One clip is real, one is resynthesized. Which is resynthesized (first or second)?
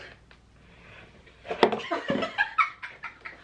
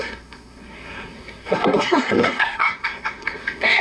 second